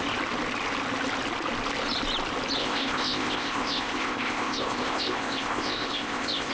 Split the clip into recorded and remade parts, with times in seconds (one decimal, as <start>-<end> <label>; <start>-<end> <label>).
0.0-2.6 recorded; 2.6-6.5 remade